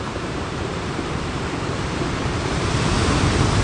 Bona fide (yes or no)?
no